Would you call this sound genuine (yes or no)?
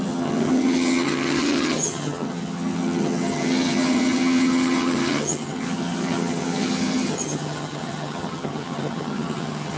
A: no